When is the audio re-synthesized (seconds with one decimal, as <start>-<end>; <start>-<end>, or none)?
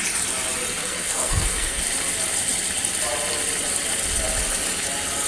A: 0.8-1.8